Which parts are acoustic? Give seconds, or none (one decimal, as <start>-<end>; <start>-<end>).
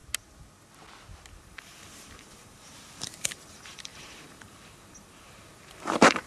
0.0-1.4